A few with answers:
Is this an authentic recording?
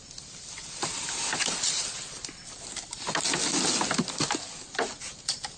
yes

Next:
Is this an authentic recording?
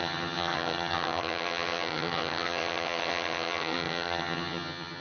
no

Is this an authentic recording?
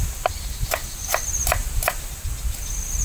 yes